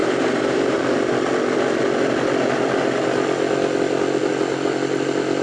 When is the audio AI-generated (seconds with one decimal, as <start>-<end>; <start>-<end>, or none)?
0.0-0.8

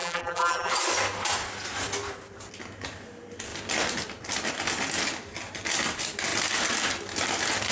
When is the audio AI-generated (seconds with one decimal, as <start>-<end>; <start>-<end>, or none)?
0.0-0.7